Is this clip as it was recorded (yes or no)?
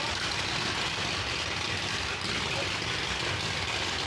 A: no